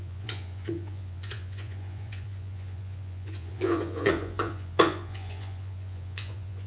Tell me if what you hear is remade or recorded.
remade